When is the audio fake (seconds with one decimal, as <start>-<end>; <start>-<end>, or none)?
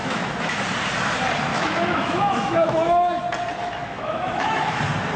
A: 0.0-0.6; 1.5-3.2; 3.6-4.8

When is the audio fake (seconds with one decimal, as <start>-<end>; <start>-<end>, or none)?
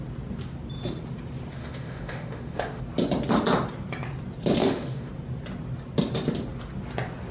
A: 1.6-2.8; 4.6-5.1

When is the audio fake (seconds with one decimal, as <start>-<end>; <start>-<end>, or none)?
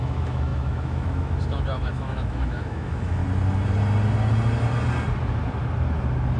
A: 0.0-3.2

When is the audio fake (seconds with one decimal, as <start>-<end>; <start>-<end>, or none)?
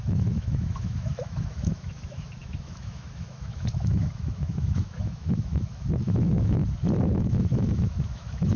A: 0.0-6.6; 7.2-8.6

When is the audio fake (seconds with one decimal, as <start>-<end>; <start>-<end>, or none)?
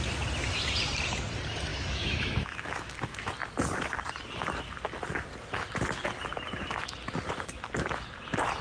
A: 1.7-3.3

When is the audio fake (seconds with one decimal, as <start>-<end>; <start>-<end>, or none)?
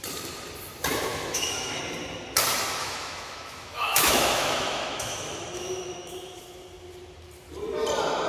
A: 1.1-1.8; 2.8-6.4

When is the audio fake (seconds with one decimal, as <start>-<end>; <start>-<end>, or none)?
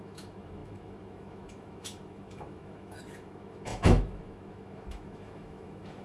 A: 0.0-6.0